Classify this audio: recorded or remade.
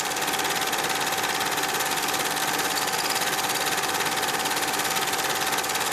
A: recorded